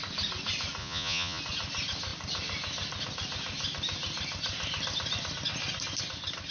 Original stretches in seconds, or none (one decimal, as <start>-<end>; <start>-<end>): 0.0-0.8; 1.4-6.5